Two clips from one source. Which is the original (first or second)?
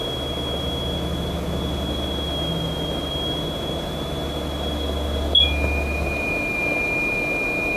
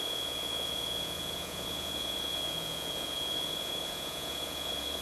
first